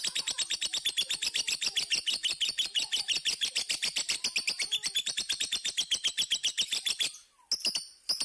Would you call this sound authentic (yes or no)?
yes